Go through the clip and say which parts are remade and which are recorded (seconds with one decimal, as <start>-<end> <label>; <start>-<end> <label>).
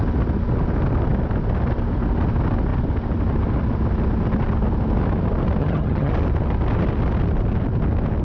0.0-5.6 recorded; 5.6-6.1 remade; 6.1-8.2 recorded